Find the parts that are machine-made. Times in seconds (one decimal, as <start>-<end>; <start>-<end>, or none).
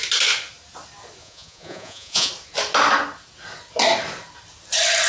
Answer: 1.2-2.3